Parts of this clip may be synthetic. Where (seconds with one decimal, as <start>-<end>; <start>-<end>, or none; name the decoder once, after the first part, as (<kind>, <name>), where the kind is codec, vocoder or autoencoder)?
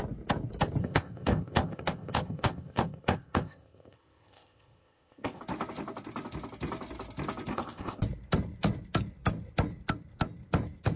0.8-5.4 (codec, ZipCodec); 7.5-8.0